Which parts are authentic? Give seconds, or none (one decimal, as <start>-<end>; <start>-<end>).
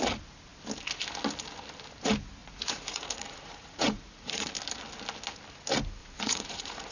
0.0-2.4; 4.5-6.0